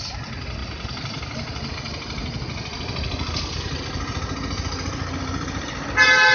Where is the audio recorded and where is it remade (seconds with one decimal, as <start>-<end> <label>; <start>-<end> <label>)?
0.0-6.3 recorded

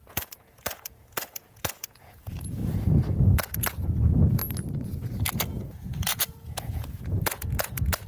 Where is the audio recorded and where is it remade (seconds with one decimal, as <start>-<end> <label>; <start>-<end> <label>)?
0.0-2.6 remade; 2.6-3.2 recorded; 3.2-4.4 remade; 4.4-5.3 recorded; 5.3-8.1 remade

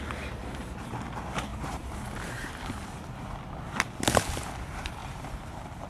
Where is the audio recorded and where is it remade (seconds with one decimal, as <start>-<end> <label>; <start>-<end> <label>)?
0.0-0.4 recorded; 0.4-0.9 remade; 0.9-1.5 recorded; 1.5-2.5 remade; 2.5-5.0 recorded; 5.0-5.9 remade

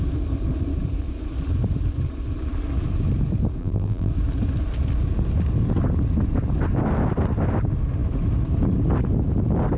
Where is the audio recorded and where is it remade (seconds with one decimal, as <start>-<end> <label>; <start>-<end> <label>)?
0.0-3.6 recorded; 3.6-4.1 remade; 4.1-9.8 recorded

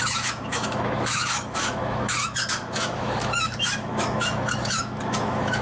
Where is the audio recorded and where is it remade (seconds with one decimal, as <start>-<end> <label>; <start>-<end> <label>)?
0.0-5.6 remade

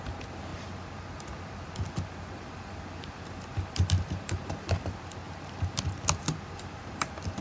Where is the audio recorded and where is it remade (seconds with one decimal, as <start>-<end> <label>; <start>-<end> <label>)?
0.0-7.4 recorded